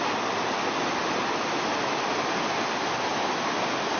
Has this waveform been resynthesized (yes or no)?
no